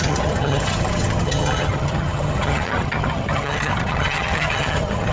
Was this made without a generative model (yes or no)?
no